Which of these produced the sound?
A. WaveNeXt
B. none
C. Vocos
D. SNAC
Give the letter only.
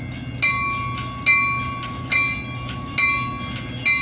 B